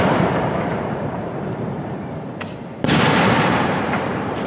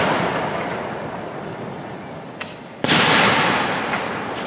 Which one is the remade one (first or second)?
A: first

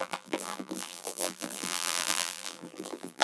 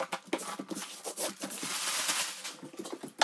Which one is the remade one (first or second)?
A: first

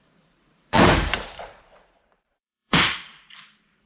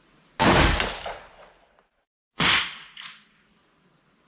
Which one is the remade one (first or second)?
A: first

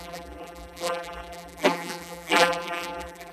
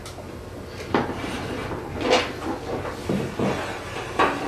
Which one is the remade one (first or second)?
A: first